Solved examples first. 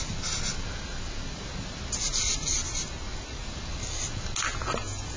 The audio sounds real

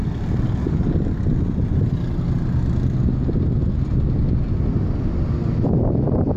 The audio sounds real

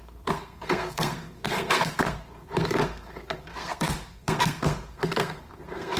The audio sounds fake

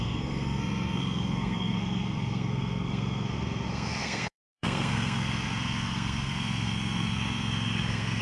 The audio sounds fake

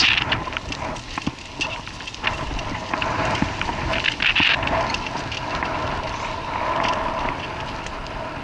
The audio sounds real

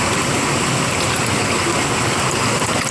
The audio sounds real